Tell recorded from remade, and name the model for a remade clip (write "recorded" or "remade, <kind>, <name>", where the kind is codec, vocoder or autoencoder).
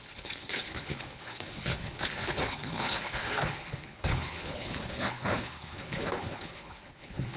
remade, codec, HILCodec